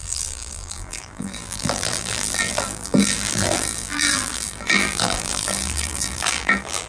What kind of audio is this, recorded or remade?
remade